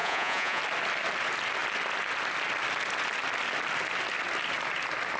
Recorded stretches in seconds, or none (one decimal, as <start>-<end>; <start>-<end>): 0.6-5.2